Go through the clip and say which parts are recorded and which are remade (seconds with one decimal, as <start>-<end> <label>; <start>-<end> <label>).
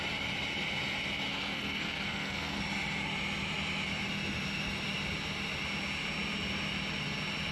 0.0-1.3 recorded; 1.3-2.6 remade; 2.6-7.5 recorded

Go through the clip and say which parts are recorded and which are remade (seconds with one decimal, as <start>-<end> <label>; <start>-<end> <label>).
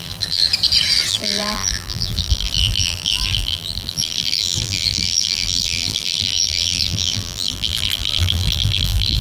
0.0-0.4 remade; 0.4-1.1 recorded; 1.1-9.2 remade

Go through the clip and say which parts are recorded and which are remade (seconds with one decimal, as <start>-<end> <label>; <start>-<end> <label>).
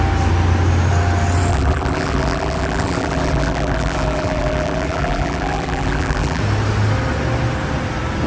0.0-1.5 recorded; 1.5-6.4 remade; 6.4-8.3 recorded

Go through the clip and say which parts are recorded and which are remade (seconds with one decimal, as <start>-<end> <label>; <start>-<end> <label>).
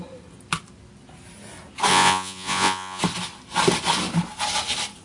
0.0-1.9 recorded; 1.9-3.0 remade; 3.0-5.0 recorded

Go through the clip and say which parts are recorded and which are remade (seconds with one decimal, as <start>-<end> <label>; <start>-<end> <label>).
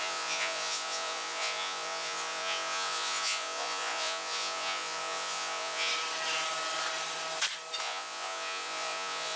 0.0-5.9 remade; 5.9-7.8 recorded; 7.8-9.4 remade